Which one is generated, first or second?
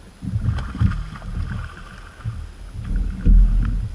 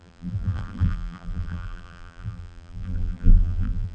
second